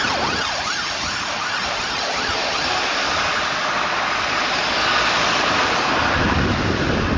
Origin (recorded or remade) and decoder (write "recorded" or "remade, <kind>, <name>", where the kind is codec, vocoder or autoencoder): recorded